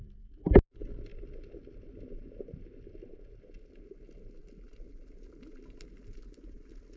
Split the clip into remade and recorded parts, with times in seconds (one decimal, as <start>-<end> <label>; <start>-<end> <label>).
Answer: 0.0-7.0 recorded